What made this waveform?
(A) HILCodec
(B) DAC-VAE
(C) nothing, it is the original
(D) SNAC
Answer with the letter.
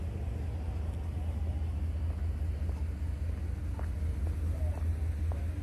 C